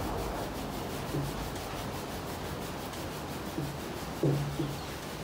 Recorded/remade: recorded